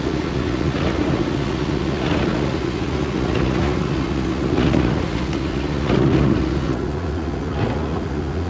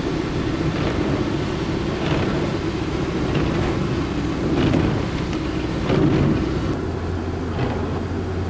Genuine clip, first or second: second